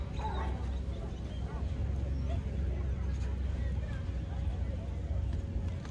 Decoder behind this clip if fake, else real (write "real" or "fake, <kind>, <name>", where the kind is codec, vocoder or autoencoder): real